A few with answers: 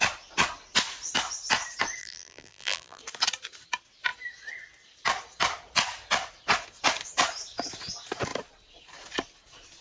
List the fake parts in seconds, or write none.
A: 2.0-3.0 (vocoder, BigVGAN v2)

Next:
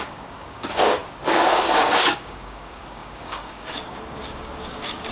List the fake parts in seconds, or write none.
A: 0.0-5.1 (codec, DAC)

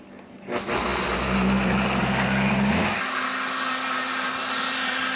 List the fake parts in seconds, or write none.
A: none